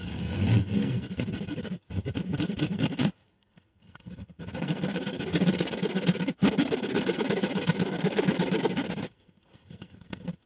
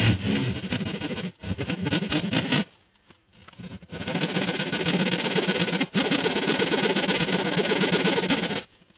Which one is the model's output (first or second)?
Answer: first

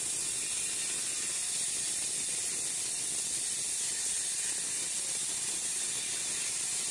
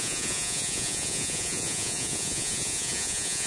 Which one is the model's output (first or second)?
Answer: second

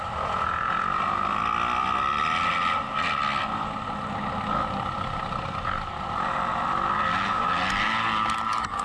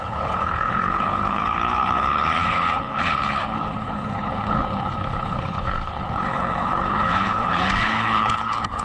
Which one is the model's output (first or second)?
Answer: second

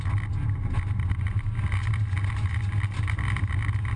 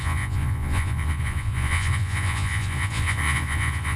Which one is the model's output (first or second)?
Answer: second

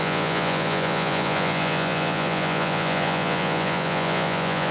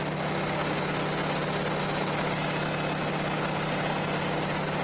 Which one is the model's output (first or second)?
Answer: first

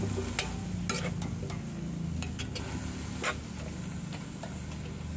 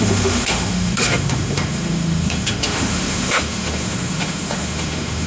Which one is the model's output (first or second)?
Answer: second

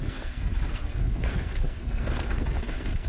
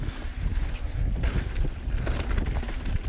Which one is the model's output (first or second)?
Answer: first